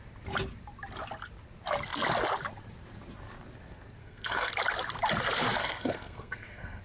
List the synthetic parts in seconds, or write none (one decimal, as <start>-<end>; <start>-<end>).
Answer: 4.0-4.5; 5.6-6.8